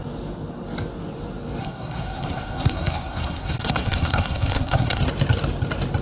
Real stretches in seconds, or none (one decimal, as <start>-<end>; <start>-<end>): 0.0-1.6; 5.0-6.0